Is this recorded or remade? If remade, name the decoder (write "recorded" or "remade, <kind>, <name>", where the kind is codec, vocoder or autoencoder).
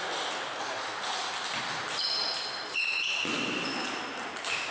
recorded